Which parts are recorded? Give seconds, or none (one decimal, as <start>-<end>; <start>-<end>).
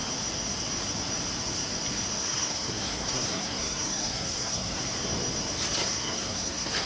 0.0-2.2; 4.8-5.8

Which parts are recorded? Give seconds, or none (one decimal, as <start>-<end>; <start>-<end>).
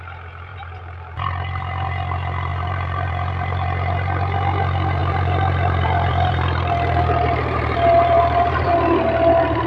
0.0-0.5; 1.4-2.5; 3.1-5.0; 8.7-9.7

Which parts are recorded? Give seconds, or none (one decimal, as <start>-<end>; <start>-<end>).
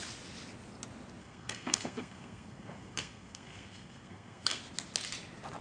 0.0-1.2; 4.6-5.6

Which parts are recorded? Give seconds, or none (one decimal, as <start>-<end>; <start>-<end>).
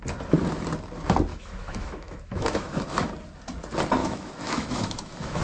0.0-1.3; 3.1-4.0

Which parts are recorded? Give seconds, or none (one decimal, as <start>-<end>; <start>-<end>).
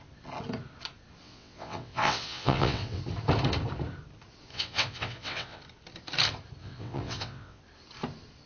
0.0-1.2; 3.0-4.5; 5.6-6.6; 7.6-8.5